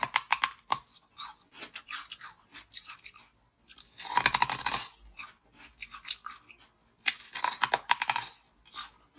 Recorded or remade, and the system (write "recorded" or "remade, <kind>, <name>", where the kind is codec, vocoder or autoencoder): recorded